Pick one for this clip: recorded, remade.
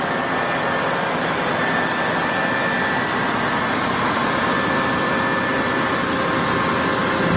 recorded